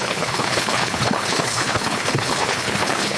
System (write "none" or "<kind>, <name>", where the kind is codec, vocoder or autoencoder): codec, HILCodec